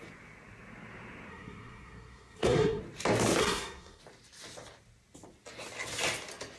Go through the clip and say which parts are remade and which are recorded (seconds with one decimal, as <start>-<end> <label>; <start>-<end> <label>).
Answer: 0.0-1.3 recorded; 1.3-2.8 remade; 2.8-3.4 recorded; 3.4-4.0 remade; 4.0-6.6 recorded